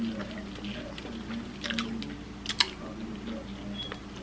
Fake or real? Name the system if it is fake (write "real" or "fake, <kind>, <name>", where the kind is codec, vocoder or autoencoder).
real